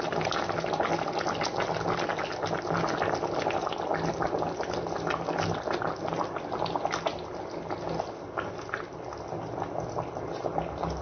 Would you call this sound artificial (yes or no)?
no